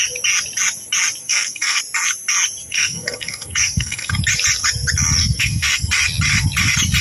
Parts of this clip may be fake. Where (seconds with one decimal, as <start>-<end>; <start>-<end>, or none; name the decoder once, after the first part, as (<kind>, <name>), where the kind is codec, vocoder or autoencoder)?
1.2-1.8 (codec, SNAC); 2.6-4.2; 5.2-5.9

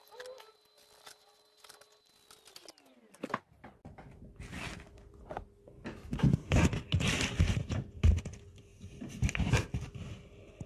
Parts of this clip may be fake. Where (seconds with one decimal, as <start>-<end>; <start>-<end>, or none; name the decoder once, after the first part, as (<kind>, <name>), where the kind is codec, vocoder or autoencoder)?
none

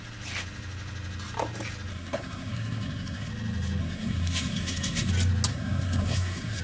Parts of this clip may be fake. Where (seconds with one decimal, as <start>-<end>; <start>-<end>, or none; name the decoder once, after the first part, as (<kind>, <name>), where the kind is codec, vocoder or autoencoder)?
1.9-3.3 (codec, SNAC); 3.8-5.1; 5.5-6.6

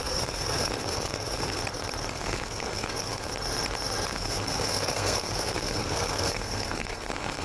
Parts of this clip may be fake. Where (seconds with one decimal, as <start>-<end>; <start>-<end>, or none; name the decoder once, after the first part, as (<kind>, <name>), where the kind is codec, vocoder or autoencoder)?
0.0-1.6 (codec, SNAC); 2.1-3.3; 4.1-7.4

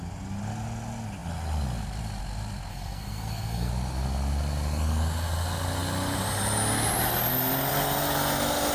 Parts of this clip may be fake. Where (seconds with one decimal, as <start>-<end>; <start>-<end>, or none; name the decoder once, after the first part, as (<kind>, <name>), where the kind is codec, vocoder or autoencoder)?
2.7-3.7 (codec, SNAC)

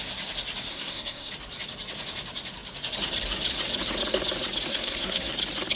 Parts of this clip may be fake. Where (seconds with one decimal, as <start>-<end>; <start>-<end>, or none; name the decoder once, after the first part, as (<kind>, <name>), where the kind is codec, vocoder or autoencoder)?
0.7-1.3 (codec, SNAC); 4.7-5.3

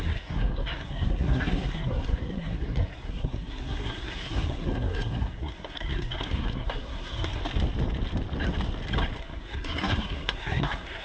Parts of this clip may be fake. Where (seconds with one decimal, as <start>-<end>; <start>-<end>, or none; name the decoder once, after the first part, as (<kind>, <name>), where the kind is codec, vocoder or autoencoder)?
0.0-7.4 (codec, SNAC); 9.2-11.0

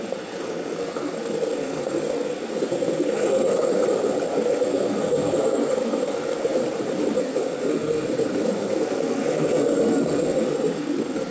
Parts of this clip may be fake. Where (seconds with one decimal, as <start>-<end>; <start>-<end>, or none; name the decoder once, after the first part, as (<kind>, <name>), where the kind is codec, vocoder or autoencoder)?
0.0-3.8 (codec, SNAC); 4.3-6.6; 7.2-11.3